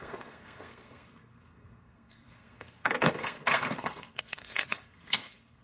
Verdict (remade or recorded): remade